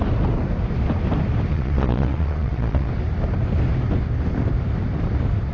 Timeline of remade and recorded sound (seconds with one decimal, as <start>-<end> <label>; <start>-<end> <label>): 0.0-1.5 recorded; 1.5-2.9 remade; 2.9-5.5 recorded